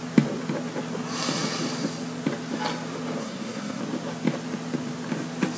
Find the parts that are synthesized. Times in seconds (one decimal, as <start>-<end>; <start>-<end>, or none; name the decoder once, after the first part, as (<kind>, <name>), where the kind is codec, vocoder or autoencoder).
3.2-3.8 (codec, SNAC)